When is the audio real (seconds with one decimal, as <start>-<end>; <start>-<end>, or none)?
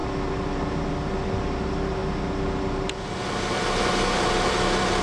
0.0-5.0